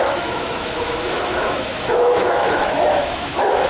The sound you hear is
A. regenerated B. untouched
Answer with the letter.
A